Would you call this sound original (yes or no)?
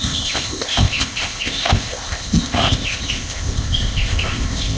no